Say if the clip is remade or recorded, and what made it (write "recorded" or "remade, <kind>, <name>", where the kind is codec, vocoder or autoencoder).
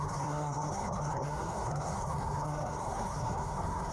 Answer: remade, codec, SNAC